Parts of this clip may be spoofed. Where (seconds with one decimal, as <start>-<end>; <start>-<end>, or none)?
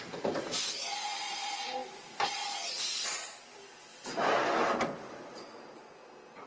none